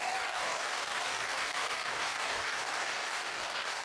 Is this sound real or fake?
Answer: fake